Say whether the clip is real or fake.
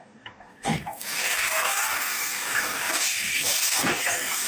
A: fake